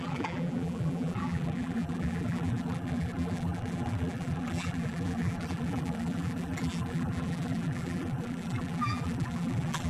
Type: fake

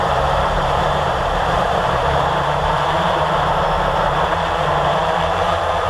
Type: fake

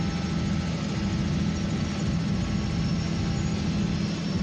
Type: real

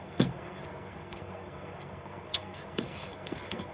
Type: fake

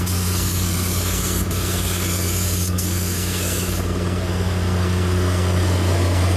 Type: fake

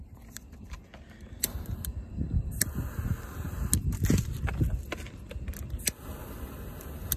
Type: real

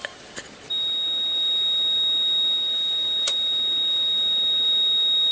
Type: real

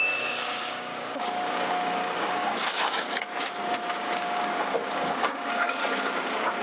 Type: fake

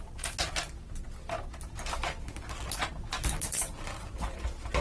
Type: real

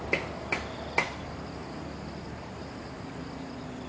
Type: real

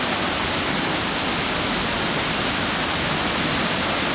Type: real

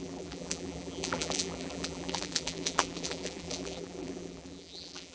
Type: fake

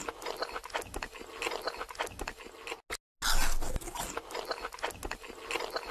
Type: real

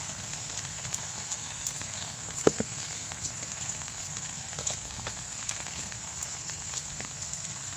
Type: fake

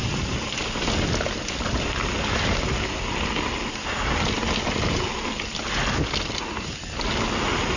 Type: real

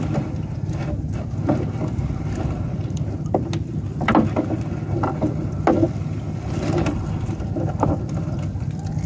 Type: real